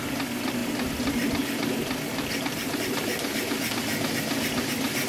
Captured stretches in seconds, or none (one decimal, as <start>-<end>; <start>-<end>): 0.0-5.1

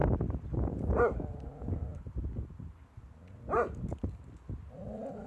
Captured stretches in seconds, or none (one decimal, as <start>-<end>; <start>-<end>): 0.0-5.3

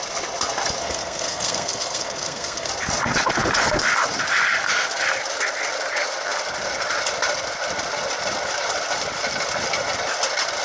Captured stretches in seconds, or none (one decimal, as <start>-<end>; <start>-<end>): 0.0-0.8; 2.7-10.6

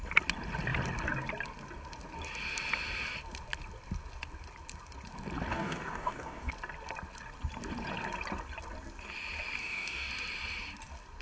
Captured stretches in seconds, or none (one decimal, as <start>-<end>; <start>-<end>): 0.0-5.5; 6.5-9.6; 10.1-11.2

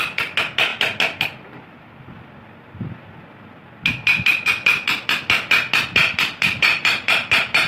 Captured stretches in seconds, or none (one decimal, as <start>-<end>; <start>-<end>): 0.0-0.7; 2.0-6.1

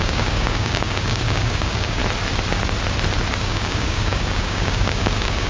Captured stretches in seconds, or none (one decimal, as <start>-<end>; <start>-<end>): 2.0-3.4

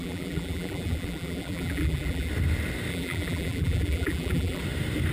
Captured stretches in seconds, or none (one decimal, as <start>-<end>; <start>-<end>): 2.3-2.9; 4.6-5.1